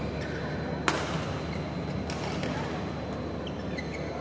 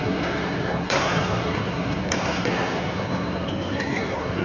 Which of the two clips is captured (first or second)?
first